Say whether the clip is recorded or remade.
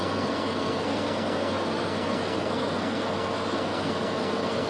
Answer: remade